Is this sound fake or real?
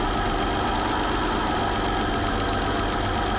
real